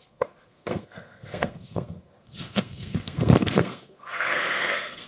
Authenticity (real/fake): fake